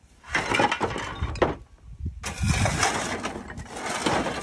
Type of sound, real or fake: real